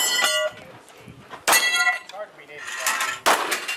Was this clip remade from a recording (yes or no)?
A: no